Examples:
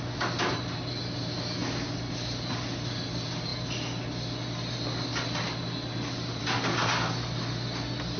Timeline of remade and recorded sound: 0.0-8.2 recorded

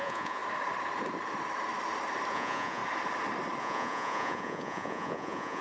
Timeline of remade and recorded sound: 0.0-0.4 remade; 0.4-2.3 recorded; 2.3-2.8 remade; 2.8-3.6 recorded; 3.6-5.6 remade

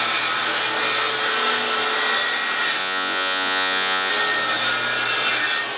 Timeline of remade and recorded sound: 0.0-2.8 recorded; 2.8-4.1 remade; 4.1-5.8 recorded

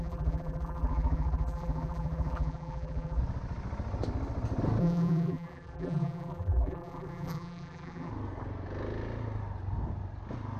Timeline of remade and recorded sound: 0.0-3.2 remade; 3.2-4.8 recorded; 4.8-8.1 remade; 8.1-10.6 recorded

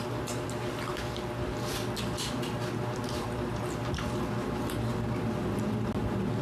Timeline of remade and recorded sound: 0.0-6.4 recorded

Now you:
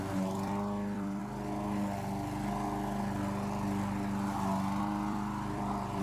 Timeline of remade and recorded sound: 0.0-1.2 remade; 1.2-4.8 recorded; 4.8-6.0 remade